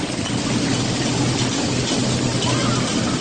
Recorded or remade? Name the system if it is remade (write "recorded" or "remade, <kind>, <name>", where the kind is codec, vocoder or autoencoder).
recorded